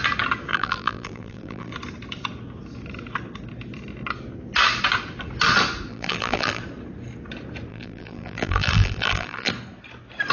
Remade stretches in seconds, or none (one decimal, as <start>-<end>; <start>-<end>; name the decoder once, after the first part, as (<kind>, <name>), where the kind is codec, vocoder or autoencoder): 0.5-1.7 (vocoder, BigVGAN v2); 5.9-6.6; 7.7-9.5